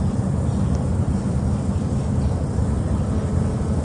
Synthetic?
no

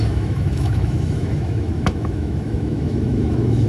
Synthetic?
yes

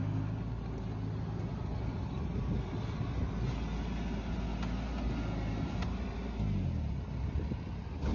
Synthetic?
no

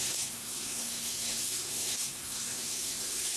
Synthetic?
yes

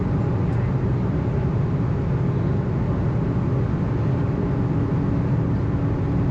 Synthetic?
no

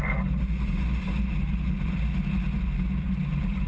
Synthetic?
no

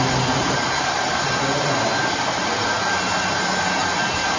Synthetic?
no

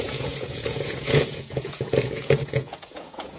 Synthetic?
yes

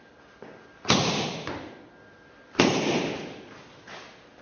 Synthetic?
no